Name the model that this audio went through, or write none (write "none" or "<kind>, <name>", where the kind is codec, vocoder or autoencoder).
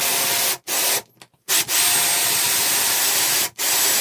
none